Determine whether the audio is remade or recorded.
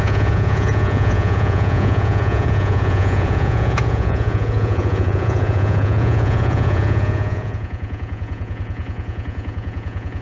remade